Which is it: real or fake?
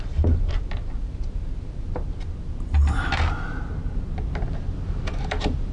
real